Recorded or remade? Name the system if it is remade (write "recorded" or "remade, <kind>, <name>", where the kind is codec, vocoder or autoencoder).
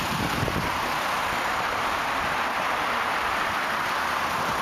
remade, vocoder, BigVGAN v2